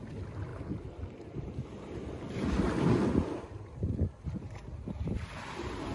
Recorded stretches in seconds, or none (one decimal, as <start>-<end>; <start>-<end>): 0.0-5.9